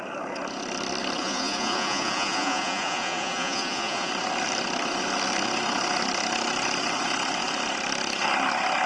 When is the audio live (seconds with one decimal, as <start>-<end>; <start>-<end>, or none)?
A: 0.0-1.2; 4.1-8.9